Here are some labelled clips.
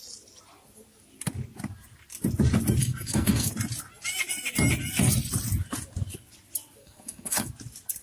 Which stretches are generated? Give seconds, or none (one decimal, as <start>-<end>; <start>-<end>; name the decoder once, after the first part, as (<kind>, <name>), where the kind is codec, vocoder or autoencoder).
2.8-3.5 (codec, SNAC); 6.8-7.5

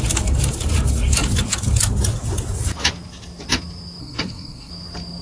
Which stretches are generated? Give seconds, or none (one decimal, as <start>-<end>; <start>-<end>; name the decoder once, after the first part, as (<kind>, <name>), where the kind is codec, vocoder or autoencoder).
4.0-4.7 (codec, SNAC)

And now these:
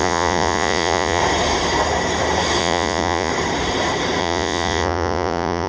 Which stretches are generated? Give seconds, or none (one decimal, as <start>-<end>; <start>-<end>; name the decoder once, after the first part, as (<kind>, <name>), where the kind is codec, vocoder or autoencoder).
0.0-1.2 (vocoder, Vocos); 2.6-3.3; 4.2-5.7

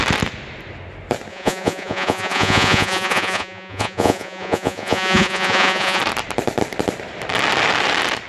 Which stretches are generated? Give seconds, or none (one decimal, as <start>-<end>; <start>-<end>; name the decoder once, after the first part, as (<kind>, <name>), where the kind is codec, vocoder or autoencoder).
1.3-6.0 (vocoder, Vocos)